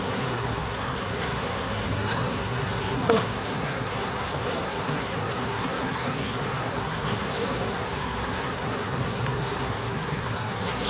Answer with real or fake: fake